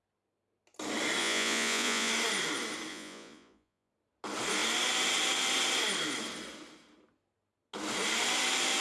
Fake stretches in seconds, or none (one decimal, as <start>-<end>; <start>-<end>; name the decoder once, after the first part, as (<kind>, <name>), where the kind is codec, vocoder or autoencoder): 1.2-2.1 (vocoder, Vocos); 2.9-3.9